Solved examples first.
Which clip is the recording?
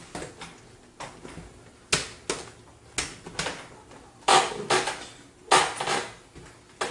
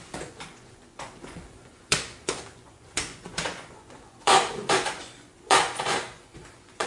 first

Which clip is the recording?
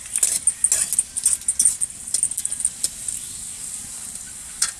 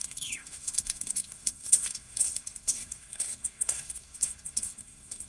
first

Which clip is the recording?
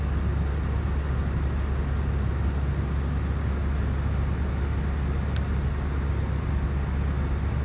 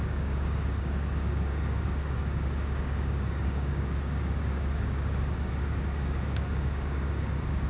first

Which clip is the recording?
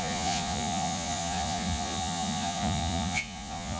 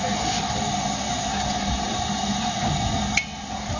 second